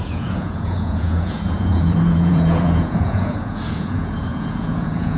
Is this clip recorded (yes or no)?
no